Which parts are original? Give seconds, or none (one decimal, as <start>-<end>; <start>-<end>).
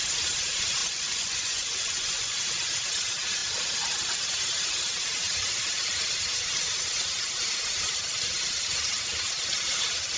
0.0-0.8; 2.4-10.2